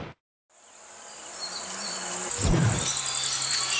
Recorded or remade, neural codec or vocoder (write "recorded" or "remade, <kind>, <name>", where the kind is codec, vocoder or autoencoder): recorded